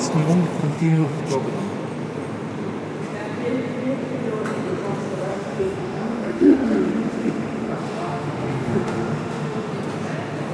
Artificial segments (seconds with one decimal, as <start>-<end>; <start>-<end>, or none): 0.6-1.2; 5.3-9.7